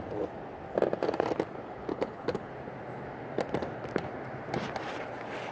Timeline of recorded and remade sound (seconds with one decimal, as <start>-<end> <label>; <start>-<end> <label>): 0.0-1.9 recorded; 1.9-2.5 remade; 2.5-5.5 recorded